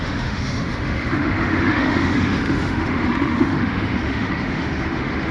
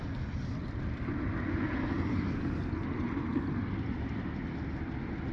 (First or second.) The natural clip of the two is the second